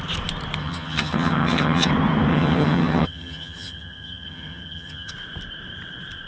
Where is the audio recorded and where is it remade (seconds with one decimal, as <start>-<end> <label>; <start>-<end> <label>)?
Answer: 0.0-0.6 recorded; 0.6-1.9 remade; 1.9-2.3 recorded; 2.3-5.1 remade; 5.1-6.3 recorded